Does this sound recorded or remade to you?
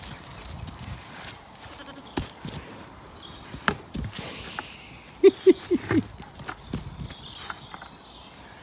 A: recorded